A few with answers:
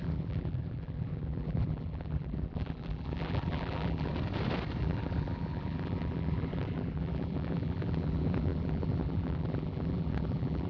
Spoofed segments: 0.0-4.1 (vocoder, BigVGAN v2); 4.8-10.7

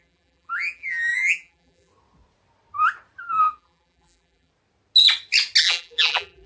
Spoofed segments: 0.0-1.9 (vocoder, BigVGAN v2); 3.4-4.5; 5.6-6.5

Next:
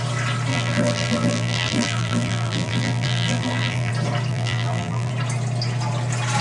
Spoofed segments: 0.5-3.9 (vocoder, BigVGAN v2); 4.3-5.1

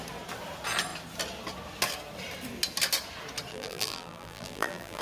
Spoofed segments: 3.5-5.0 (vocoder, BigVGAN v2)

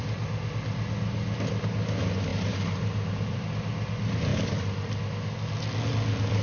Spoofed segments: 2.3-3.5 (vocoder, BigVGAN v2)

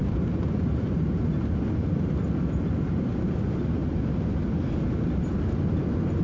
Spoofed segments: 0.0-1.3 (vocoder, BigVGAN v2)

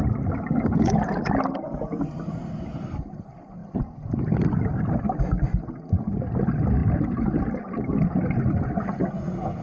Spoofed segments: 3.6-4.7 (vocoder, BigVGAN v2); 6.8-8.4

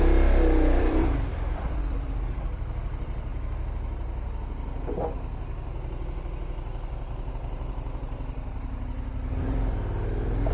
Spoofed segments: 0.0-3.3 (vocoder, BigVGAN v2); 7.3-10.5